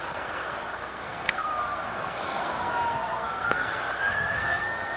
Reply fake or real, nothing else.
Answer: fake